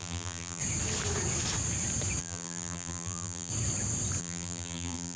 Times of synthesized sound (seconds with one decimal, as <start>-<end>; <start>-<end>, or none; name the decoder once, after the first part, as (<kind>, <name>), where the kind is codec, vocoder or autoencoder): 0.0-0.6 (vocoder, BigVGAN v2); 2.2-3.5; 4.2-5.2